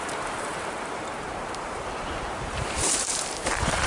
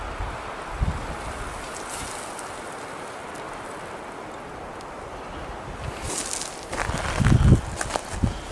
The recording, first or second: second